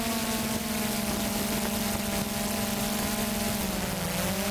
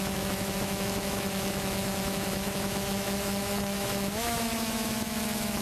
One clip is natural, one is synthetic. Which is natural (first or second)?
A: first